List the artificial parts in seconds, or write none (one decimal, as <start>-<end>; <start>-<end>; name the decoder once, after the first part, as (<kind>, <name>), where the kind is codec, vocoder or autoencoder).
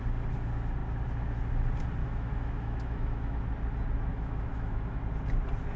2.0-3.4 (autoencoder, DAC-VAE); 4.1-5.0